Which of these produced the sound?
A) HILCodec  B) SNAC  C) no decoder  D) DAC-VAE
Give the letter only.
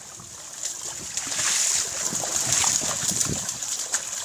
C